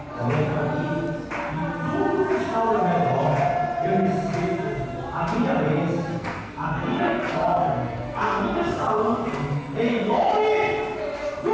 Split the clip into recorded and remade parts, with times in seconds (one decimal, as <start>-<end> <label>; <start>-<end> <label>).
0.0-6.1 recorded; 6.1-10.3 remade; 10.3-11.5 recorded